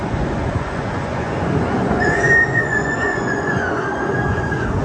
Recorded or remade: remade